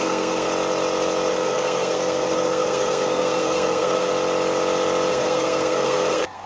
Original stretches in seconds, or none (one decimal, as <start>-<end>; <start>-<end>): 0.5-1.3; 4.1-5.1